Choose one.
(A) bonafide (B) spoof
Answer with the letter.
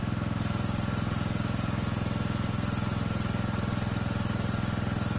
A